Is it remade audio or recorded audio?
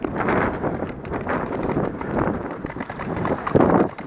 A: remade